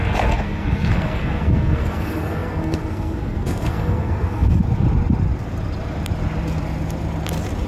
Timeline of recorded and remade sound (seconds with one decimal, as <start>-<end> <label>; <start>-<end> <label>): 0.0-4.6 remade; 4.6-7.7 recorded